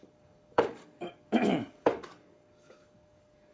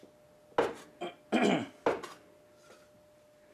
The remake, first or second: first